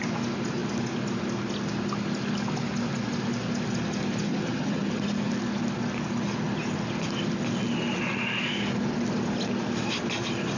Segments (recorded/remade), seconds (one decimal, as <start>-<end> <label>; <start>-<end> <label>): 0.0-4.3 recorded; 4.3-4.9 remade; 4.9-10.6 recorded